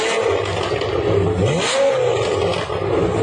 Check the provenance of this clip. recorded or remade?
recorded